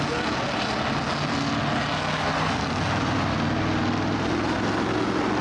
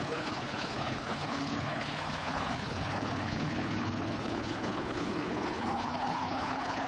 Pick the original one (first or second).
first